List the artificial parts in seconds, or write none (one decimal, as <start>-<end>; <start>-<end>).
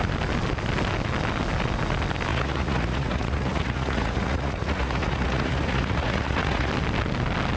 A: 2.3-6.7